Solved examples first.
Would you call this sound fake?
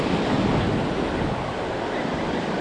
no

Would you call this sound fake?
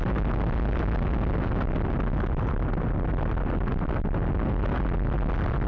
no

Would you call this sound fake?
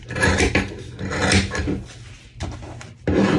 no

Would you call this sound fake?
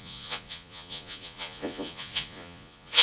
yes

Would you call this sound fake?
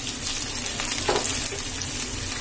no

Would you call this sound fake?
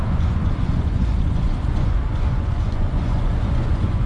yes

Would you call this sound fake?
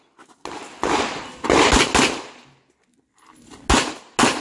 no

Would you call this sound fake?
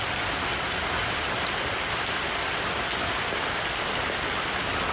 no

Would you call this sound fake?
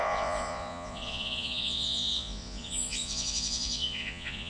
yes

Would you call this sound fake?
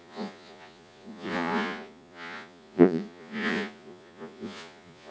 yes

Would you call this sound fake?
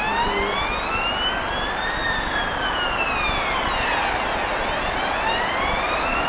no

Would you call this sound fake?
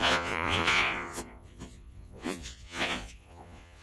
yes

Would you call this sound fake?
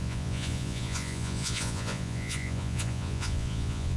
yes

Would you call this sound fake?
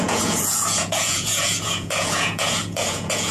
yes